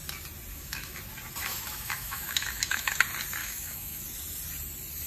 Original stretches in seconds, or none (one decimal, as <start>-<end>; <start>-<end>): 0.0-0.5; 1.0-1.4; 2.9-3.4; 4.0-5.1